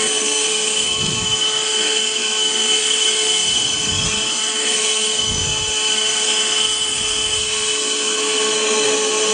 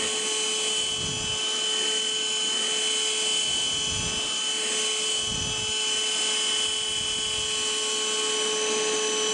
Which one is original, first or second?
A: second